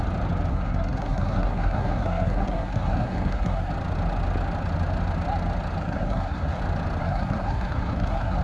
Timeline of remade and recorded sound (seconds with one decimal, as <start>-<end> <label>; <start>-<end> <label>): 0.0-0.5 recorded; 0.5-3.7 remade; 3.7-5.8 recorded; 5.8-6.6 remade; 6.6-7.0 recorded; 7.0-8.4 remade